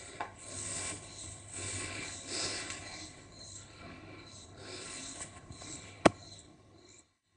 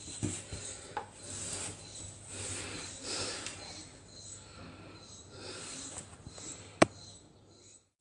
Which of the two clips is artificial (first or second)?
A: first